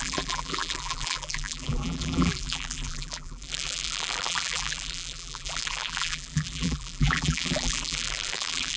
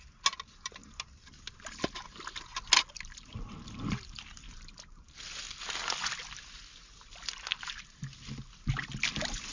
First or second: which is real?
second